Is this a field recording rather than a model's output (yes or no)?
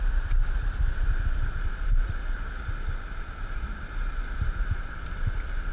yes